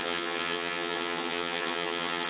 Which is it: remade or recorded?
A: remade